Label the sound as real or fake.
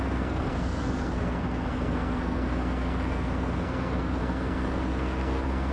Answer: fake